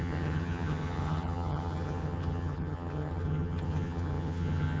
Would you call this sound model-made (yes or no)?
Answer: yes